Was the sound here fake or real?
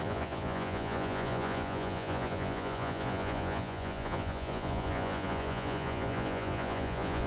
fake